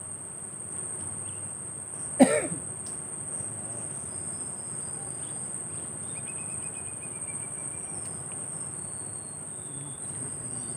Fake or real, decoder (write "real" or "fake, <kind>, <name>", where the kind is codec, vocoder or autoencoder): real